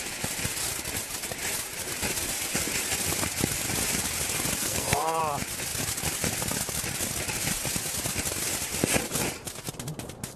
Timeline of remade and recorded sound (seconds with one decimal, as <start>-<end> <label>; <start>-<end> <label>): 0.0-4.6 recorded; 4.6-5.2 remade; 5.2-10.4 recorded